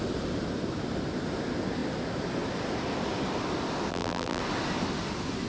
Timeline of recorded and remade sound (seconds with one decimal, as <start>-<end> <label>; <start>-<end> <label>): 0.0-3.9 recorded; 3.9-4.4 remade; 4.4-5.5 recorded